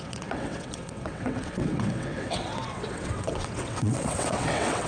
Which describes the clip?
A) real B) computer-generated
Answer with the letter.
B